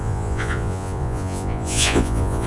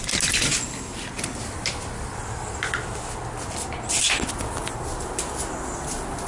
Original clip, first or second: second